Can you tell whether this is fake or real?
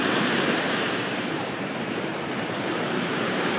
fake